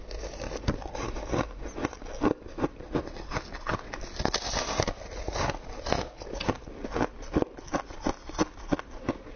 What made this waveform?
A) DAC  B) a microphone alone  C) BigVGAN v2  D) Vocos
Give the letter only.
B